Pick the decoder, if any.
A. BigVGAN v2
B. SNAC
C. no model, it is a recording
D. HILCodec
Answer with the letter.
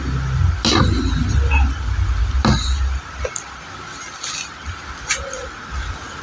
C